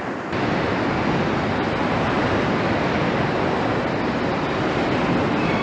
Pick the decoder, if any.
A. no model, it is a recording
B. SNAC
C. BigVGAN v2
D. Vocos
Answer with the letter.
A